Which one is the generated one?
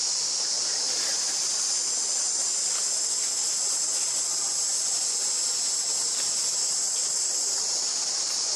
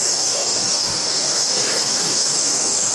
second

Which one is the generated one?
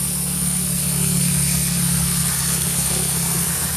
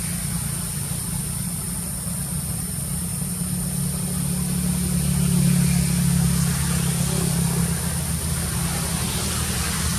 first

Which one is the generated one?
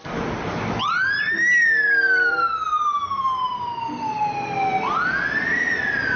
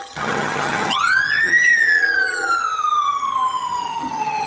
second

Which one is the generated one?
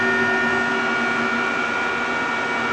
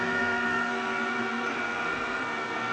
second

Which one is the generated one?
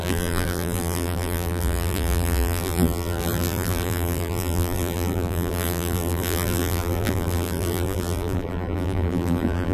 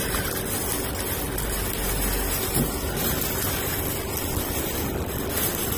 first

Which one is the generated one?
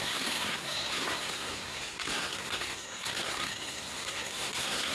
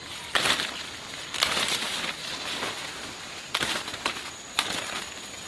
first